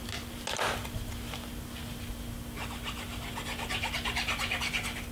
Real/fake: real